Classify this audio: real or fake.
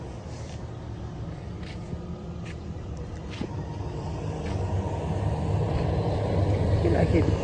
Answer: real